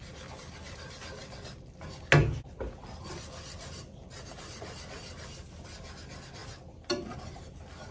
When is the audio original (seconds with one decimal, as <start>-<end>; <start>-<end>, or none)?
0.0-7.9